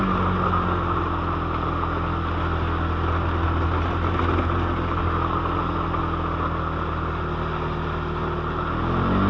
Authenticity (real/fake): real